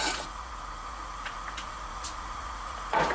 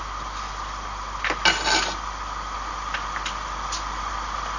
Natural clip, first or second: second